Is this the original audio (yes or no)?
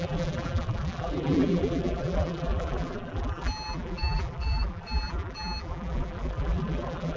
no